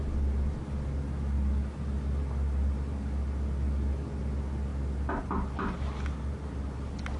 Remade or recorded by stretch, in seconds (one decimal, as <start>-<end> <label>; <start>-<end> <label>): 0.0-7.2 recorded